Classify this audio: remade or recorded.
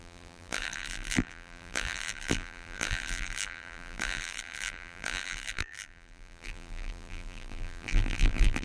remade